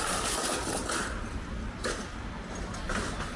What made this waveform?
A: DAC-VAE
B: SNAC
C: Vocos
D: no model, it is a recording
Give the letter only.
D